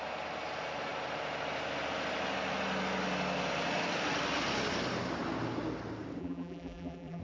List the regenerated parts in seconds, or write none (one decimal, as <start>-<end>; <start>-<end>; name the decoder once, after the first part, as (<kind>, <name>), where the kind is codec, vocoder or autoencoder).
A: 6.2-7.2 (vocoder, BigVGAN v2)